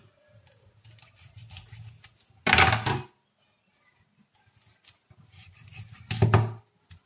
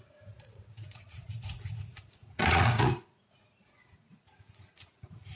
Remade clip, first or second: second